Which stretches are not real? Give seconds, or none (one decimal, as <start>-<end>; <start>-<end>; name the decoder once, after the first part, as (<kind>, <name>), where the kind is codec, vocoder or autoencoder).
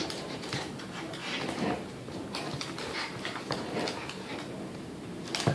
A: 0.0-1.2 (vocoder, BigVGAN v2); 4.5-5.5